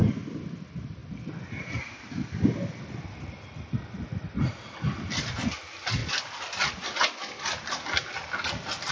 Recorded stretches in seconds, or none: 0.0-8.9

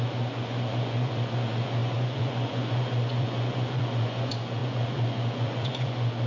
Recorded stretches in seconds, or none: none

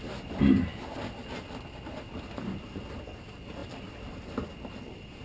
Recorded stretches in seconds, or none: 0.0-5.2

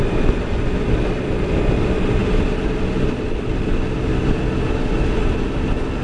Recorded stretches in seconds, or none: 0.0-6.0

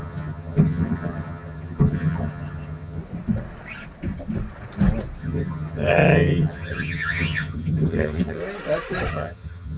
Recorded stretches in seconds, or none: 3.0-5.2; 8.4-9.1

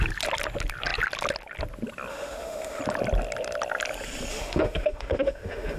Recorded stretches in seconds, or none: 0.0-2.1; 2.8-4.3